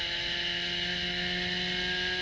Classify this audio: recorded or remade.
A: recorded